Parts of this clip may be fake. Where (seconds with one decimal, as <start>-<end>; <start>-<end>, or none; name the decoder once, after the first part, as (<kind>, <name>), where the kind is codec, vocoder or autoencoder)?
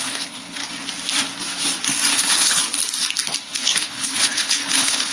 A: 0.0-0.6 (codec, HILCodec); 2.1-2.6; 3.4-5.1